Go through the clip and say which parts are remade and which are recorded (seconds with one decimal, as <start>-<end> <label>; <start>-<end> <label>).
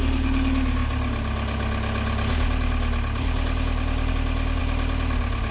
0.0-5.5 recorded